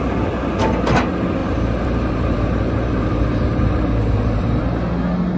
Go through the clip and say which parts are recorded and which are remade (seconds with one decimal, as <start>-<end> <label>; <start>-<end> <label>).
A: 0.0-1.4 recorded; 1.4-4.6 remade; 4.6-5.4 recorded